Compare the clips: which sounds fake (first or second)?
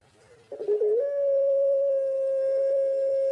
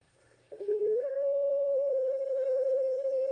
second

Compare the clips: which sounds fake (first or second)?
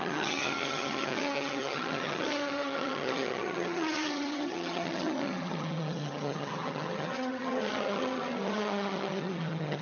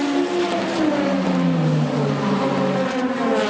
first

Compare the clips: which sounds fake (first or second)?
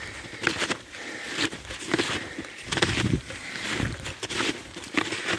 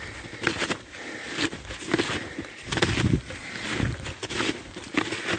first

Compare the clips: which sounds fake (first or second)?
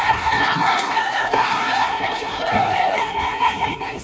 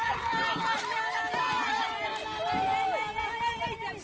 first